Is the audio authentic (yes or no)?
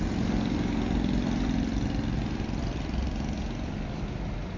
yes